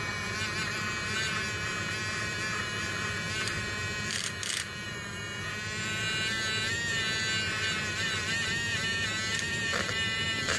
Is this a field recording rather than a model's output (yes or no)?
no